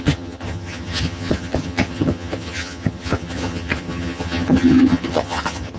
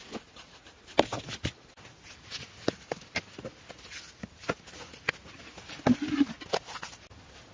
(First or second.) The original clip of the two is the second